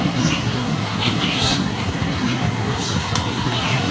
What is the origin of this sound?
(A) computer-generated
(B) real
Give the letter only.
A